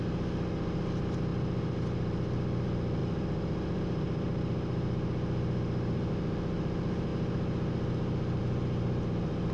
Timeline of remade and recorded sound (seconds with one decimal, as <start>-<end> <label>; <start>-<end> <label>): 0.0-9.5 recorded